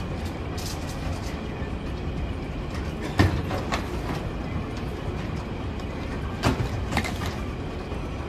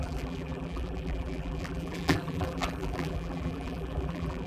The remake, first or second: second